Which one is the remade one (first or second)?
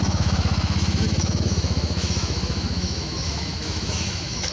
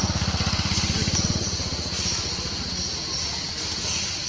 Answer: first